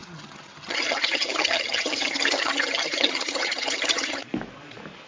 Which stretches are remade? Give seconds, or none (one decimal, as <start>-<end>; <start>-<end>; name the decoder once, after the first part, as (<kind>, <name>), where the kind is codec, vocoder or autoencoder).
0.0-4.2 (vocoder, HiFi-GAN)